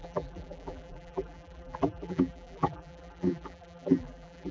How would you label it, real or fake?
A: fake